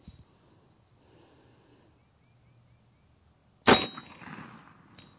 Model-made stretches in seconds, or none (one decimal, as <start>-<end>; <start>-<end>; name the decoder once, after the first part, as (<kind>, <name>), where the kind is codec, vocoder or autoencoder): none